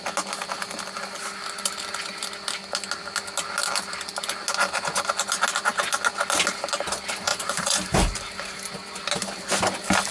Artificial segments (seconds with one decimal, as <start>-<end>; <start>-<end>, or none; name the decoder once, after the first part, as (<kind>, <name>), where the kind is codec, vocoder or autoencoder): 7.3-8.7 (vocoder, BigVGAN v2)

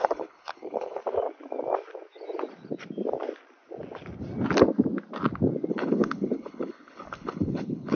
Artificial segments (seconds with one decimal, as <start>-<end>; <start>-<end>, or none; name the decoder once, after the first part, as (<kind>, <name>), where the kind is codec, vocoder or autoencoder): 0.0-1.0 (codec, HILCodec); 5.7-7.9

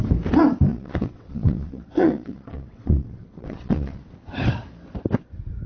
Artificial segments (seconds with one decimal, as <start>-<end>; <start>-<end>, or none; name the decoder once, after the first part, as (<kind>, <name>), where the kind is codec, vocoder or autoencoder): 0.7-4.1 (vocoder, WaveNeXt)

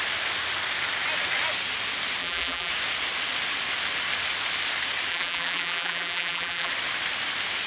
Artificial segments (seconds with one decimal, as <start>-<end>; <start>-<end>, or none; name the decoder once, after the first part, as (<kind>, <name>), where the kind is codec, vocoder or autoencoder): 2.2-2.7 (vocoder, BigVGAN v2); 5.1-6.7

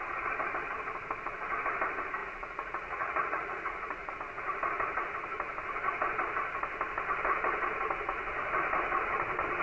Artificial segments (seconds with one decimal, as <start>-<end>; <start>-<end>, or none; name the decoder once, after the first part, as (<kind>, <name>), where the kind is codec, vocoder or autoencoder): 2.2-4.1 (vocoder, Vocos)